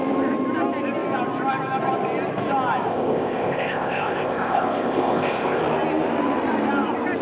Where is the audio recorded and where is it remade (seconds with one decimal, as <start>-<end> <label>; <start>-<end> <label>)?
0.0-2.9 recorded; 2.9-5.6 remade; 5.6-7.2 recorded